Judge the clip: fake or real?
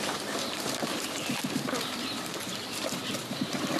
fake